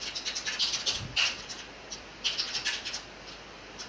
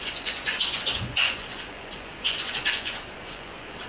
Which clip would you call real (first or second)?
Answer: first